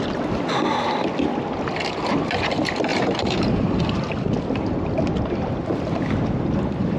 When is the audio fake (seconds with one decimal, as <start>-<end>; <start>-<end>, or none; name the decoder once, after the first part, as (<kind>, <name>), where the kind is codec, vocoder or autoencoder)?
2.9-3.8 (vocoder, BigVGAN v2)